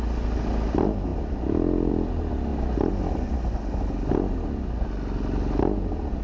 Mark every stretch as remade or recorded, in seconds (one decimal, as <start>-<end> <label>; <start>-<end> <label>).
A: 0.0-6.2 recorded